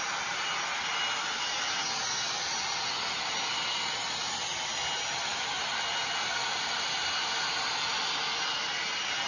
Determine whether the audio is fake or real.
real